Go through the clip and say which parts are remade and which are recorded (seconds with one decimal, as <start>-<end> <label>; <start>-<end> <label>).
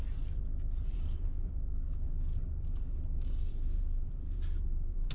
0.0-0.8 recorded; 0.8-1.5 remade; 1.5-1.9 recorded; 1.9-5.1 remade